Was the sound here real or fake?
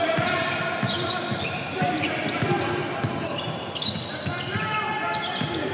real